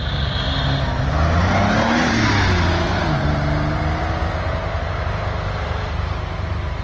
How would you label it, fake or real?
real